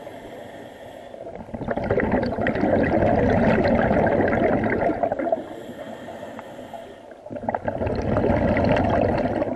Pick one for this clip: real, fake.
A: real